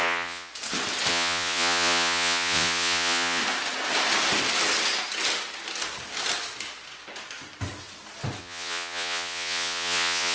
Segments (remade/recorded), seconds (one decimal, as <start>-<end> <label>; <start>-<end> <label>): 0.0-0.5 remade; 0.5-1.1 recorded; 1.1-3.4 remade; 3.4-8.4 recorded; 8.4-10.3 remade